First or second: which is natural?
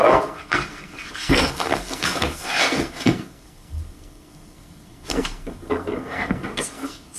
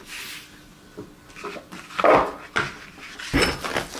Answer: second